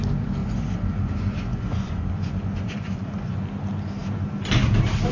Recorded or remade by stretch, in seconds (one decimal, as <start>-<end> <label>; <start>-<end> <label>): 0.0-0.4 recorded; 0.4-3.4 remade; 3.4-5.1 recorded